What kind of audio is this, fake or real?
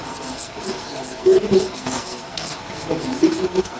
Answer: fake